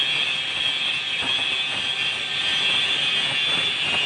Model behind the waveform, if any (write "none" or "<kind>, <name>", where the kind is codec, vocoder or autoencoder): none